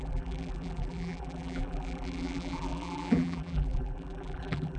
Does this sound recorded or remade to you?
remade